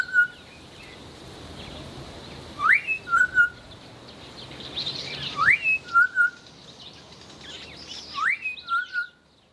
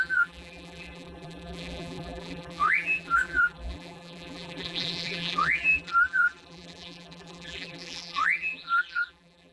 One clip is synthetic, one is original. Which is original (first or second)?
first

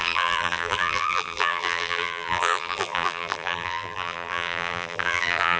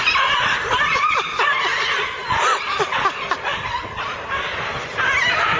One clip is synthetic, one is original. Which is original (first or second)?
second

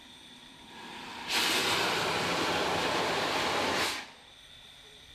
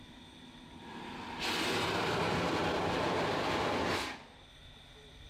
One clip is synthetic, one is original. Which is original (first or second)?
second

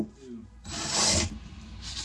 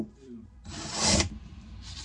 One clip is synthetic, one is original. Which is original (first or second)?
first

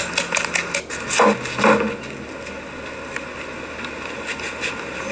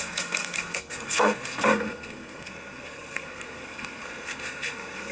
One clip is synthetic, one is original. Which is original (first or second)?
first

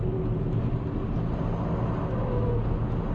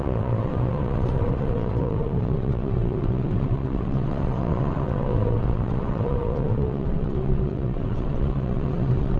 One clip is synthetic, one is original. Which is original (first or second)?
first